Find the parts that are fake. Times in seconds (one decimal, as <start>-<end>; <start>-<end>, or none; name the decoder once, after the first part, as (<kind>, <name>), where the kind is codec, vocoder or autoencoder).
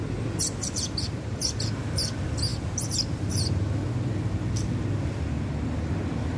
none